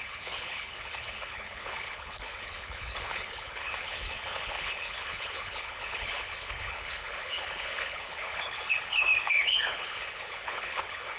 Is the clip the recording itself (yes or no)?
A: no